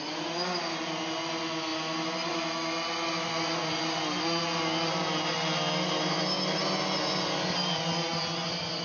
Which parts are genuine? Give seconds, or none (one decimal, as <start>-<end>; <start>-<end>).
0.0-8.8